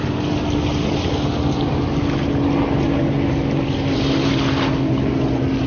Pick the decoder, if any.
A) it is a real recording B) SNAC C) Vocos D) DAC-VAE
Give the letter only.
A